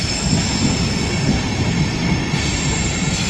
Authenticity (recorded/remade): recorded